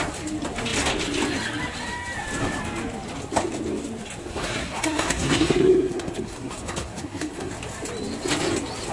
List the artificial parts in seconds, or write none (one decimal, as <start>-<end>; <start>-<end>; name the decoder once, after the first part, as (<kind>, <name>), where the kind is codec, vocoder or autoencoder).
4.2-7.5 (codec, SNAC)